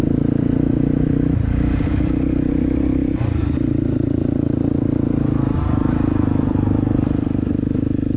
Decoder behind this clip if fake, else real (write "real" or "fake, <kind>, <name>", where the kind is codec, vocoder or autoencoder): fake, vocoder, BigVGAN v2